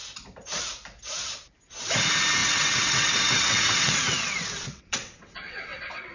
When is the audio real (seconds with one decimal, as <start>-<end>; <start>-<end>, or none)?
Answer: 0.0-2.4